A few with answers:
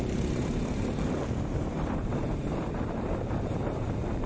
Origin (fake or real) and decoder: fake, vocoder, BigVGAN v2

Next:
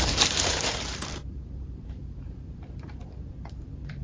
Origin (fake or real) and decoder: fake, vocoder, BigVGAN v2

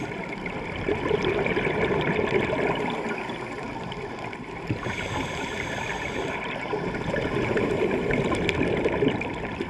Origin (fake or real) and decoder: fake, vocoder, BigVGAN v2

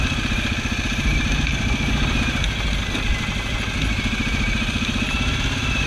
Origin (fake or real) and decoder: real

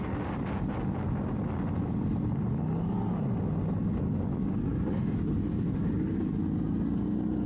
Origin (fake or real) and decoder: real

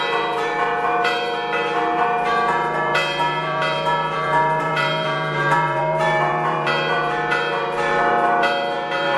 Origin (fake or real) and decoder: fake, vocoder, BigVGAN v2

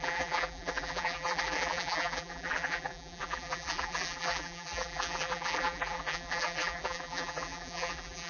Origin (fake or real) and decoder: fake, vocoder, BigVGAN v2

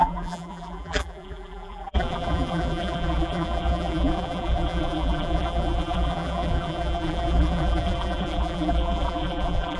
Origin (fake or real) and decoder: fake, vocoder, BigVGAN v2